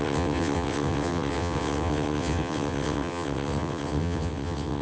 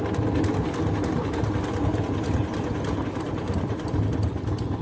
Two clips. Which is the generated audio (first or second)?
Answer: first